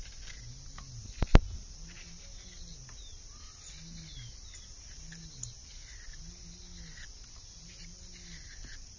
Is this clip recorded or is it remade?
recorded